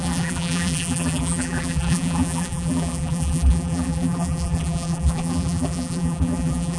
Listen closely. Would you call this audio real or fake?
fake